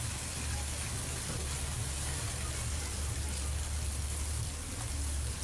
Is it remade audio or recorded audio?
recorded